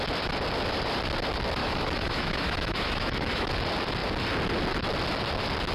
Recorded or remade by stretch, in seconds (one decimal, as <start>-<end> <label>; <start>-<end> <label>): 0.0-1.6 recorded; 1.6-3.5 remade; 3.5-5.7 recorded